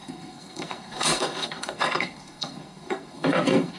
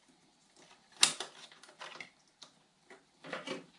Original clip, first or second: second